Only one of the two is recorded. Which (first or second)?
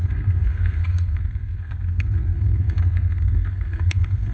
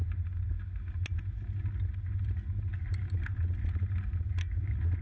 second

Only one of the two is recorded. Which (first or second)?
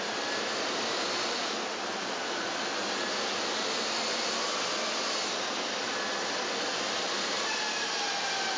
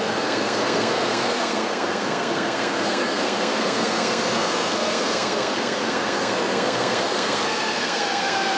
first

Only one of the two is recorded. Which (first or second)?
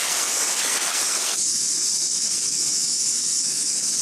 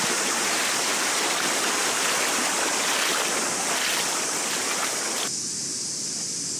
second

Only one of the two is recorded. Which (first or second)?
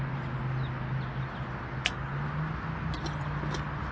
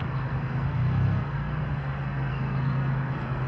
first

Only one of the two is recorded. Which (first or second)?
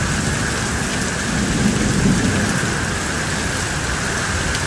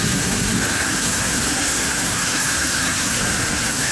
first